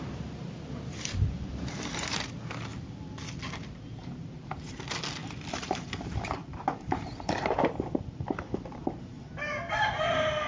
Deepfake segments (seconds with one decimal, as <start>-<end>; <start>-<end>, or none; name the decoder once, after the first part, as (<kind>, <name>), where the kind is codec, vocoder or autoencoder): 5.2-9.4 (vocoder, BigVGAN v2)

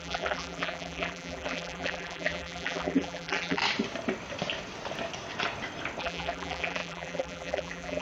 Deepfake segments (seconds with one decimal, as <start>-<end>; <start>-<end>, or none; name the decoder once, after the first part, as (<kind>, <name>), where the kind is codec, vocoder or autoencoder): 0.0-3.6 (vocoder, BigVGAN v2); 6.0-8.0

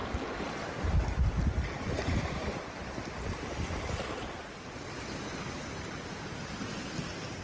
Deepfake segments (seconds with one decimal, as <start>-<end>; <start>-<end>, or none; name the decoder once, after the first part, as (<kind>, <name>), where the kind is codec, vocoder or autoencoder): 0.0-4.4 (vocoder, BigVGAN v2)

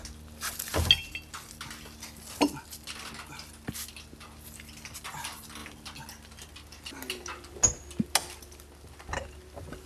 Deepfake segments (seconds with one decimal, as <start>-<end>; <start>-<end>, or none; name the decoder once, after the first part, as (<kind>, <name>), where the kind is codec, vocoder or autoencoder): none

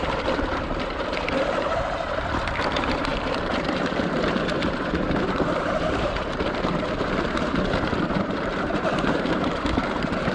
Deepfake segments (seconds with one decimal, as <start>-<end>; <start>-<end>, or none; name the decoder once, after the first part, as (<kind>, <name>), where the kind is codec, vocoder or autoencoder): 0.0-10.3 (vocoder, BigVGAN v2)